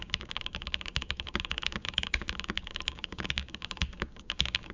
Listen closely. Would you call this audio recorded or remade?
remade